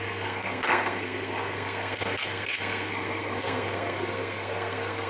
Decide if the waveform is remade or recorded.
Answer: remade